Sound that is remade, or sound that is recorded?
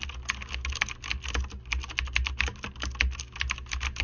recorded